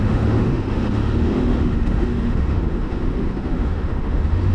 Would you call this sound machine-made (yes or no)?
yes